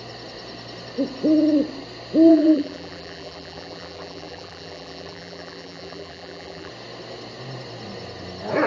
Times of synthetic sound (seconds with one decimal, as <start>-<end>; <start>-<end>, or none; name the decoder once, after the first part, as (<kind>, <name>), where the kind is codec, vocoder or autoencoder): 2.3-6.7 (vocoder, BigVGAN v2)